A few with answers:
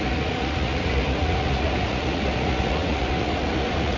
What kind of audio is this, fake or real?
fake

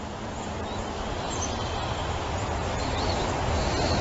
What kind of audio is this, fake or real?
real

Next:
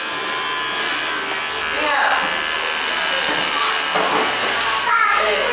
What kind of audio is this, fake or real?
real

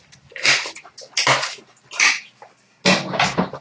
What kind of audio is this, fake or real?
real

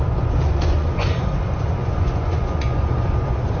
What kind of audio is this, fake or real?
fake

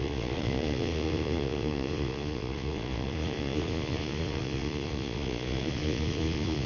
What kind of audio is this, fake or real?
fake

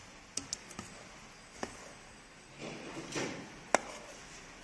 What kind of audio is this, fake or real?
real